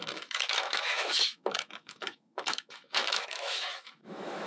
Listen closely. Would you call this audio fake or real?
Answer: fake